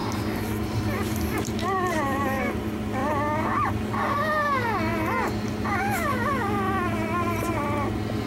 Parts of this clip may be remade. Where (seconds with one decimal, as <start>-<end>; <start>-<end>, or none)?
0.0-2.2